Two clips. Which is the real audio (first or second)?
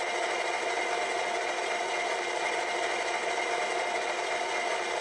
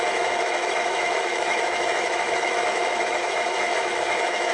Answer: first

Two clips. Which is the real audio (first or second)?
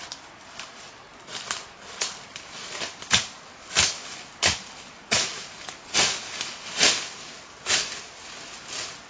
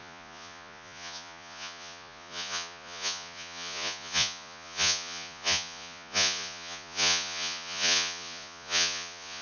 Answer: first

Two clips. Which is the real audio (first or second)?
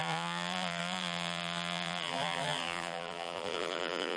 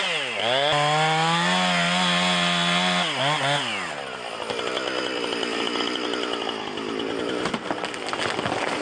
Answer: second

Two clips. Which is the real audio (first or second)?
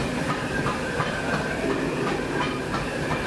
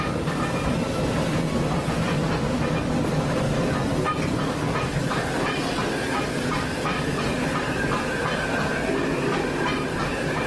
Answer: second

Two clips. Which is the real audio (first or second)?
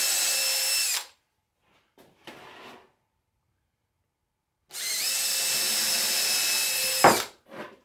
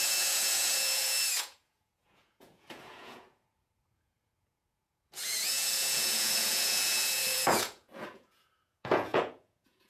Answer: first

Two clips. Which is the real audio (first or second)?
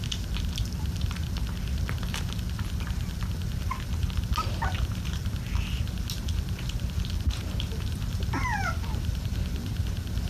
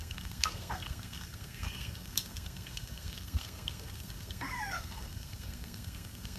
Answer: first